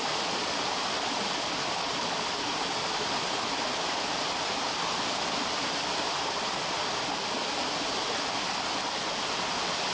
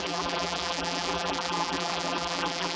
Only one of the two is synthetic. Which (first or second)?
second